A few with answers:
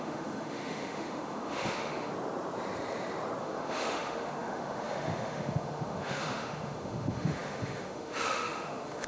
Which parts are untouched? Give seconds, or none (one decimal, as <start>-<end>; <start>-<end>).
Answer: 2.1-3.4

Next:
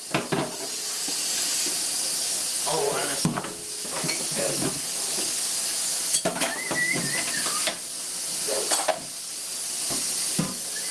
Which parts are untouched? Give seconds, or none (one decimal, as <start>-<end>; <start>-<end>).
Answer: 0.0-3.0; 5.3-6.1; 6.8-10.9

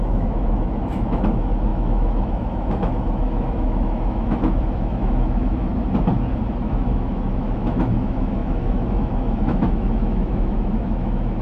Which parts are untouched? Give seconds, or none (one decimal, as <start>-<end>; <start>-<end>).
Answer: 5.7-6.6

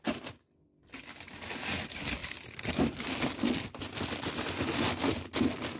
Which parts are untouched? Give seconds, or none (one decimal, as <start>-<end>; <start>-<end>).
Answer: 0.0-5.8